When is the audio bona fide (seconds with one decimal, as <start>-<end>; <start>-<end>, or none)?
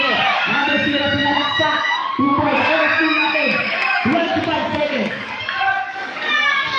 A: none